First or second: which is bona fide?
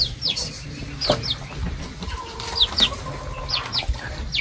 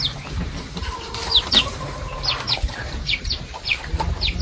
first